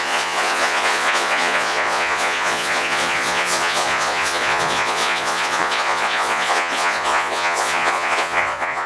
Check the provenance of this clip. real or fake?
fake